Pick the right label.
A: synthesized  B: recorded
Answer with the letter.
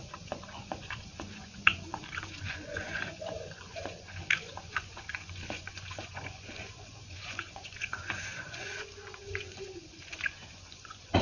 A